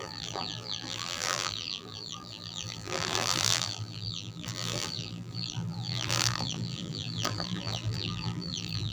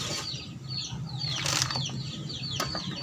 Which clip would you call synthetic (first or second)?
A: first